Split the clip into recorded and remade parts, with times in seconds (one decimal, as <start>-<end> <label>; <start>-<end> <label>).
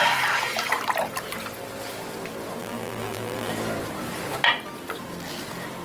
0.0-2.6 recorded; 2.6-3.5 remade; 3.5-5.8 recorded